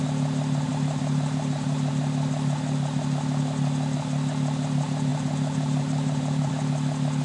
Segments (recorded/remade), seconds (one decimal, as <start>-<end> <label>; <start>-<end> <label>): 0.0-0.7 recorded; 0.7-1.9 remade; 1.9-5.1 recorded; 5.1-6.5 remade; 6.5-7.2 recorded